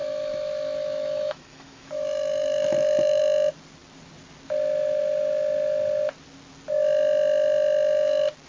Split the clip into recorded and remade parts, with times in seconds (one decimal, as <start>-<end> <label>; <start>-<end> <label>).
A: 0.0-3.2 remade; 3.2-8.5 recorded